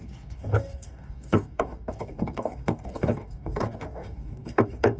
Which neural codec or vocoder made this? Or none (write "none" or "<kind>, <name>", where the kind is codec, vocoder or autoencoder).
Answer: codec, DAC